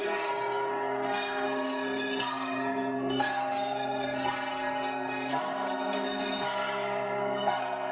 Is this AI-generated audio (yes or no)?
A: yes